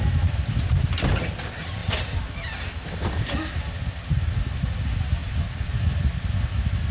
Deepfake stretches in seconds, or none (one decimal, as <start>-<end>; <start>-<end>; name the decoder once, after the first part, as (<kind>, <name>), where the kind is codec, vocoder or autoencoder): 5.2-6.0 (vocoder, BigVGAN v2)